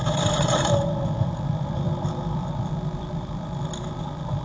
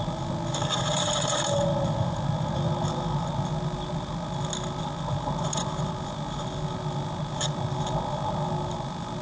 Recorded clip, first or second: second